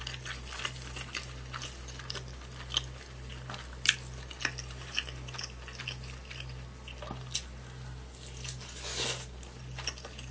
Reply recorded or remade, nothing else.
recorded